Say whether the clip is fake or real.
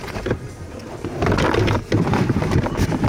real